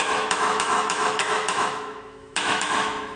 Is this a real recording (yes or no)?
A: no